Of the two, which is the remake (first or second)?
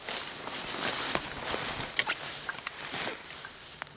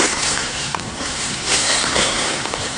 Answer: second